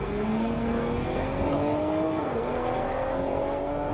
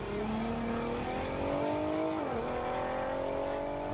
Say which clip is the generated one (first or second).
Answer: first